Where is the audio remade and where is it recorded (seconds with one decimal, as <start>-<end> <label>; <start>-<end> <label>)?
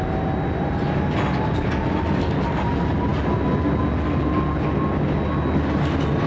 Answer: 0.0-6.3 recorded